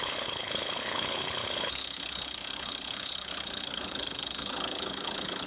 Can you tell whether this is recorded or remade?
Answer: remade